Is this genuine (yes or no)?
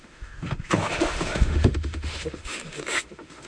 no